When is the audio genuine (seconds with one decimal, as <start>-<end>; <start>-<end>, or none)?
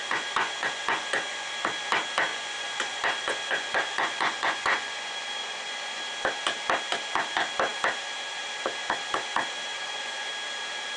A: 1.5-2.3; 6.0-9.7; 10.3-11.0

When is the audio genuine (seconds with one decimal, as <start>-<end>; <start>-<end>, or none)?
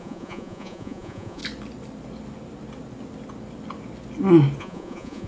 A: 1.4-4.6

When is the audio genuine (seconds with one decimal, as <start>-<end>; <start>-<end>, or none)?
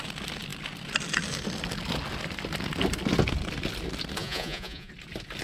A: 0.0-4.2; 4.9-5.4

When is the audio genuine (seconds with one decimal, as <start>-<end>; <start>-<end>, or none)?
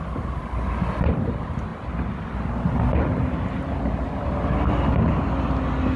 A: 0.0-6.0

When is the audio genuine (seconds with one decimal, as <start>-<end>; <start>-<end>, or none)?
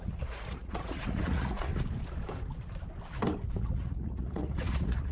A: 1.7-3.6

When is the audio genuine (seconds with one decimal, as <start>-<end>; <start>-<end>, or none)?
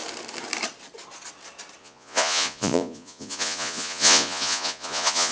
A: 0.0-1.8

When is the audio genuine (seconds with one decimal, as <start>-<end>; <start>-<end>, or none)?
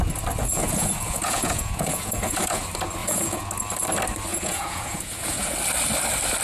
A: 0.0-0.4; 2.6-3.0; 3.5-4.3; 5.5-6.4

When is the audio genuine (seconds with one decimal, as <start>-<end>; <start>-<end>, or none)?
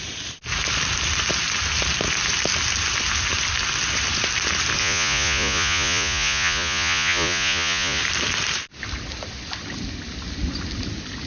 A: 0.0-4.8; 8.0-11.3